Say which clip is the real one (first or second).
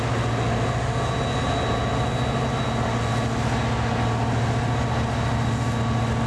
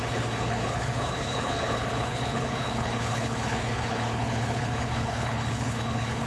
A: first